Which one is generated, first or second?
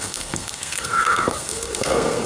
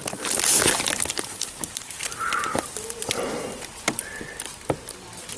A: first